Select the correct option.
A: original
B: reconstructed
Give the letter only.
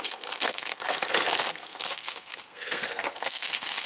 B